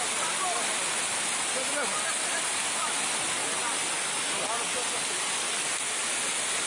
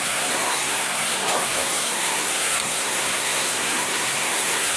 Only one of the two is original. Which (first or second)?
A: first